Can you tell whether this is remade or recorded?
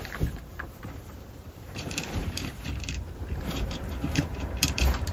remade